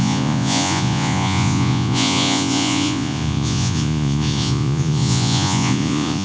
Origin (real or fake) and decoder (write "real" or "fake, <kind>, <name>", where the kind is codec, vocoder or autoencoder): fake, vocoder, Vocos